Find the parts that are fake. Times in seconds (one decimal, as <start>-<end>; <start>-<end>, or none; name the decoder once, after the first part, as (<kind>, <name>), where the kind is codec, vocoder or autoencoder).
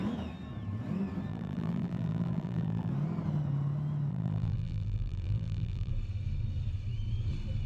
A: 1.3-2.9 (vocoder, BigVGAN v2); 4.1-5.9